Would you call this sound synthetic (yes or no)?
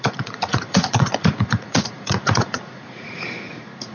yes